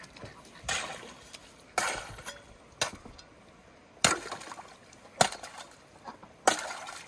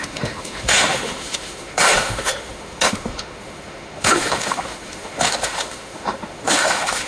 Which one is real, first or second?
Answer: first